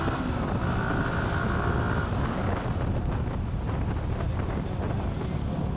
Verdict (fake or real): real